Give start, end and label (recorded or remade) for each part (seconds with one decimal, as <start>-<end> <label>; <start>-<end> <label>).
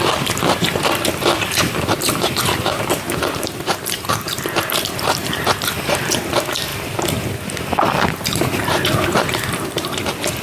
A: 0.0-6.7 remade; 6.7-7.8 recorded; 7.8-10.4 remade